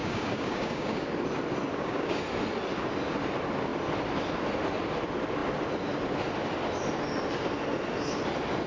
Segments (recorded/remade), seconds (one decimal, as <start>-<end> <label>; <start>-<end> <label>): 0.0-1.1 remade; 1.1-1.7 recorded; 1.7-2.2 remade; 2.2-8.7 recorded